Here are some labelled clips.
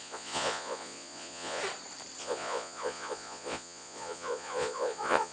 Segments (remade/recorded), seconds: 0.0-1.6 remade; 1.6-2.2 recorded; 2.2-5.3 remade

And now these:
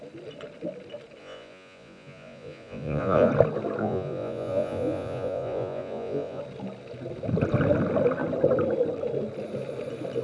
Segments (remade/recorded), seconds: 0.0-1.2 recorded; 1.2-3.3 remade; 3.3-3.8 recorded; 3.8-6.4 remade; 6.4-10.2 recorded

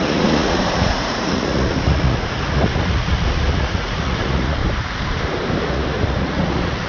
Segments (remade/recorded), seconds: 0.0-4.6 remade; 4.6-5.6 recorded; 5.6-6.9 remade

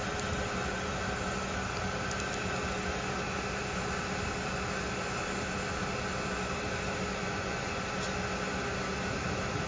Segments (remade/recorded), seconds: 0.0-7.2 recorded; 7.2-7.8 remade; 7.8-9.7 recorded

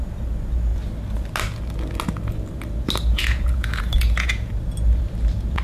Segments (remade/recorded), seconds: 0.0-3.1 recorded; 3.1-4.5 remade; 4.5-5.6 recorded

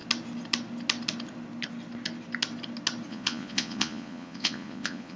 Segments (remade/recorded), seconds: 0.0-3.1 recorded; 3.1-5.2 remade